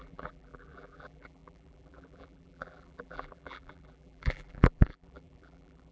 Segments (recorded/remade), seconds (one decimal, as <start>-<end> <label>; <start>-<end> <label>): 0.0-5.9 remade